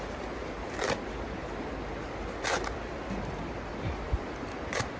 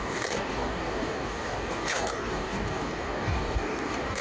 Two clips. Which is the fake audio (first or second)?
second